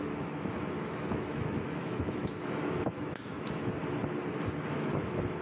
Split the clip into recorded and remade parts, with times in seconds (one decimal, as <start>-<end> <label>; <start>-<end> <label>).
0.0-3.8 remade; 3.8-4.7 recorded; 4.7-5.4 remade